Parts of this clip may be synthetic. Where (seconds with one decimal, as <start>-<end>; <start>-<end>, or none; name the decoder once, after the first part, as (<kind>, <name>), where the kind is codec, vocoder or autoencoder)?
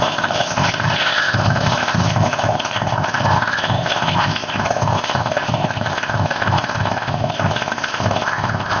0.0-8.8 (codec, ZipCodec)